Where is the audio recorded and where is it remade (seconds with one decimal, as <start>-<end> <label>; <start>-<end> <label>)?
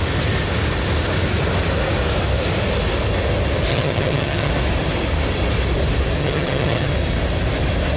0.0-3.7 recorded; 3.7-4.5 remade; 4.5-6.2 recorded; 6.2-6.9 remade; 6.9-8.0 recorded